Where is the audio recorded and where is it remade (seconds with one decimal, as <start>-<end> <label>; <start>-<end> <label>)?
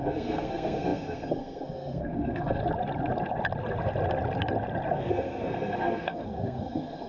0.0-2.6 remade; 2.6-4.9 recorded; 4.9-7.1 remade